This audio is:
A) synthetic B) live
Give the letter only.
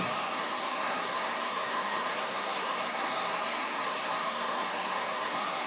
A